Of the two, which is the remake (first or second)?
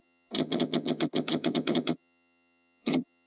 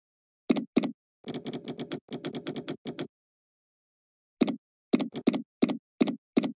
first